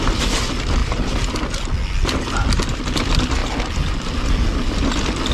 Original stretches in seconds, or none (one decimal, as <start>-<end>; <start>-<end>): 0.0-5.3